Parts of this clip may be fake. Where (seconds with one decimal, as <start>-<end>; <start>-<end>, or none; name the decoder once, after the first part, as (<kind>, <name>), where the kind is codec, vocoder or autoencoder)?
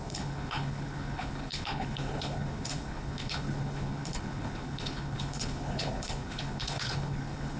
0.0-7.6 (codec, HILCodec)